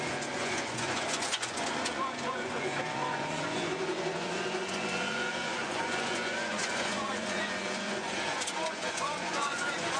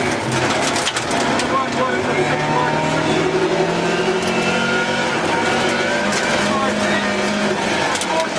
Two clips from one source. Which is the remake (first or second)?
first